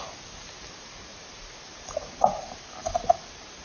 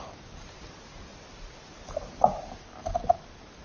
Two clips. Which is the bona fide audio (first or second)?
second